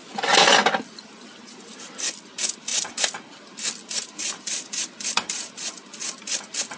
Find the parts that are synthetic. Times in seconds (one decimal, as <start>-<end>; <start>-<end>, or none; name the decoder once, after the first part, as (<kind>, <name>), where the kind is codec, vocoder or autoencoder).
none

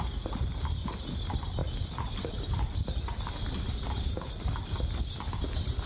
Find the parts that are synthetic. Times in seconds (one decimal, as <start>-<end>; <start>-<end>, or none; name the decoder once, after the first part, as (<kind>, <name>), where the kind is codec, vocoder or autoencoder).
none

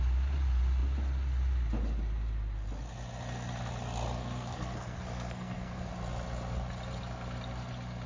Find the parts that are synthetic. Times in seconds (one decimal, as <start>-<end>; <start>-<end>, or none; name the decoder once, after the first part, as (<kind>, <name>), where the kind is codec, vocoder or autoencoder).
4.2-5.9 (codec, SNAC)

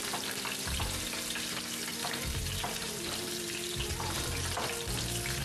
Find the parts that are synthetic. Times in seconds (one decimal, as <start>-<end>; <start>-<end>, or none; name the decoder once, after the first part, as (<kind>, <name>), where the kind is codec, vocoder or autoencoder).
1.9-4.4 (vocoder, BigVGAN v2)

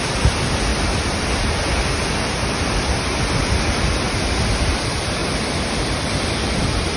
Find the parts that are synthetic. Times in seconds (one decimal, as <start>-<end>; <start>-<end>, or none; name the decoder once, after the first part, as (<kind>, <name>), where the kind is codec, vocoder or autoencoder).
0.0-0.7 (vocoder, BigVGAN v2); 3.3-5.2; 6.0-7.0